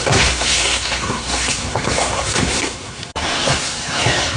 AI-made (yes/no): yes